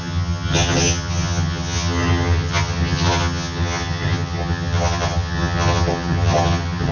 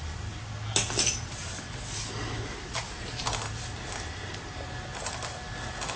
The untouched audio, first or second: second